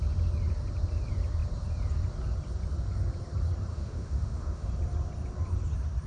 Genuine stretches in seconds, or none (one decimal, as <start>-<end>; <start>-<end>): 0.0-3.7; 4.7-6.1